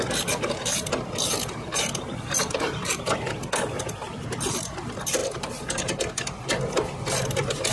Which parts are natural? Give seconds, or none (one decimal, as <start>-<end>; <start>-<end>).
none